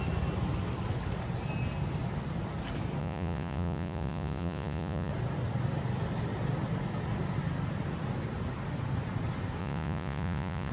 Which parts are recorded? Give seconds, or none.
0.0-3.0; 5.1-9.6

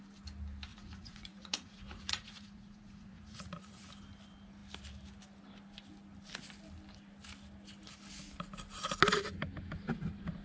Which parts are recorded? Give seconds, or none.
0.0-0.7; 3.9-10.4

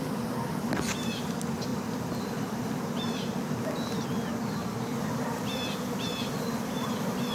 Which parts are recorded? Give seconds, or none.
0.0-7.3

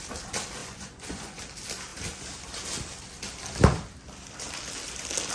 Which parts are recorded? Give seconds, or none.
0.0-0.6; 1.4-5.3

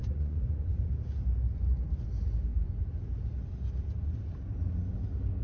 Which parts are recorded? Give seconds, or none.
0.7-2.5; 3.0-5.4